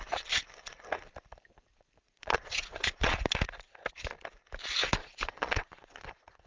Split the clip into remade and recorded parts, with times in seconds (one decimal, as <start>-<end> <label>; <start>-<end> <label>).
0.0-1.7 recorded; 1.7-3.2 remade; 3.2-5.0 recorded; 5.0-6.5 remade